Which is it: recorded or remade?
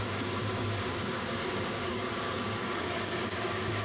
remade